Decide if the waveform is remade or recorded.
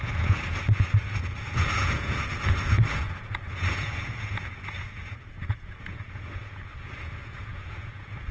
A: remade